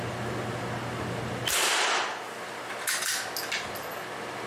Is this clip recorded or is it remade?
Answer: recorded